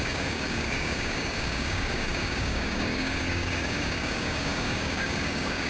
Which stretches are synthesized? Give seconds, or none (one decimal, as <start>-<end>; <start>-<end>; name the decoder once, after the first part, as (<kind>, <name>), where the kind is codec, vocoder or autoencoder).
0.0-5.7 (codec, DAC)